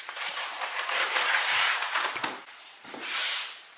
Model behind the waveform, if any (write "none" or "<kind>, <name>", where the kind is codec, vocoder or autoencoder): vocoder, BigVGAN v2